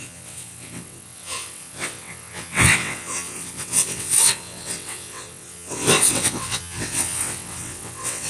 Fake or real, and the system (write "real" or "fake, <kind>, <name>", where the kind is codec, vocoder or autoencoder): fake, vocoder, WaveNeXt